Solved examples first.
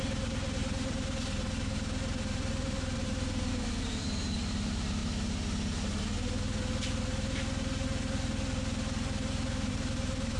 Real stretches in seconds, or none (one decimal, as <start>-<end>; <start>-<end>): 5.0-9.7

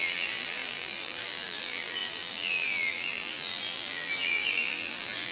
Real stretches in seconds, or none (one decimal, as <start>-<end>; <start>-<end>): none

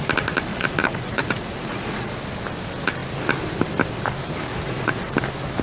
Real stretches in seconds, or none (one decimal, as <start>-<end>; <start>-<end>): 0.0-0.5; 2.1-4.5; 5.1-5.6

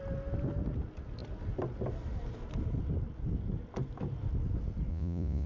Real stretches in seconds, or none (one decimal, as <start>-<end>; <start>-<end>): 0.0-4.9

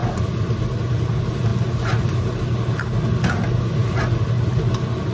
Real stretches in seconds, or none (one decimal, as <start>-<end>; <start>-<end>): 0.6-5.1

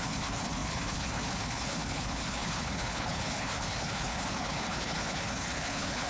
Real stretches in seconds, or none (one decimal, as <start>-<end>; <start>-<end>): none

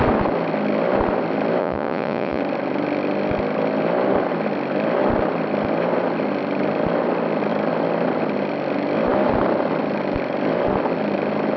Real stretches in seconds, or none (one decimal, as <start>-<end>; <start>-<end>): 0.0-1.6; 2.4-11.6